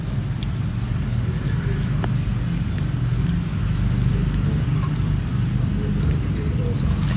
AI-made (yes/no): no